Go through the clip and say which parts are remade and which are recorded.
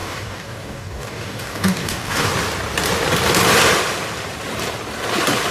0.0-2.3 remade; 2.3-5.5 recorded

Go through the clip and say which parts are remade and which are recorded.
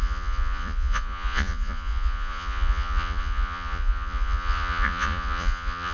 0.0-5.9 remade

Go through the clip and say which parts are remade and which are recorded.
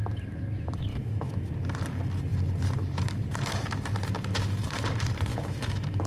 0.0-0.9 recorded; 0.9-1.5 remade; 1.5-5.3 recorded; 5.3-6.1 remade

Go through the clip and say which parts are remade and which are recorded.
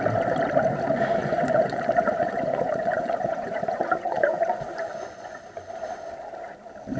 0.0-1.2 recorded; 1.2-5.4 remade; 5.4-7.0 recorded